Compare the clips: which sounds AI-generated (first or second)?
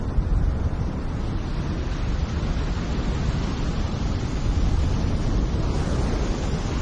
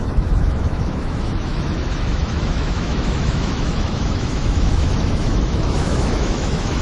second